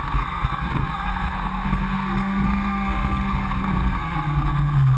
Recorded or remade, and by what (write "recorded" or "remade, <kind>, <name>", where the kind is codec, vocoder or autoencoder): remade, codec, SNAC